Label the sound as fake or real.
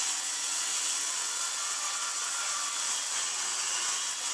fake